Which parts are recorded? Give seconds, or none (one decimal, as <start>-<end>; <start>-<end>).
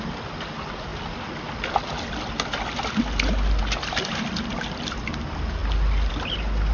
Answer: 0.0-6.7